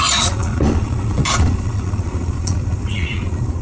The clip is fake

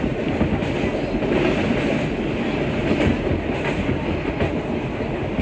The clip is real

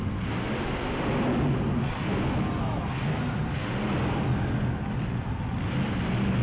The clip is real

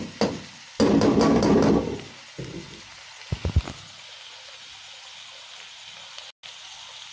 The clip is real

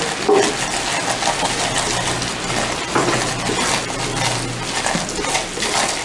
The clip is real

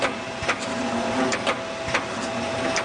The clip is real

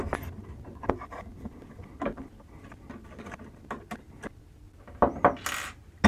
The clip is real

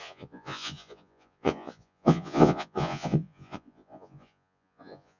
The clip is fake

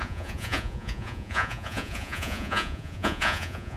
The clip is fake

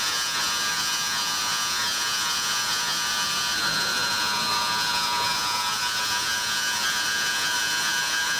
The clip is fake